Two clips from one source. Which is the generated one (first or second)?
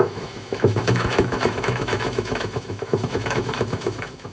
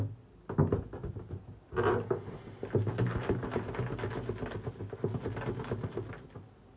first